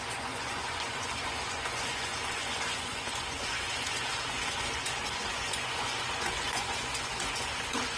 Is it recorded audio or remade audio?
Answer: remade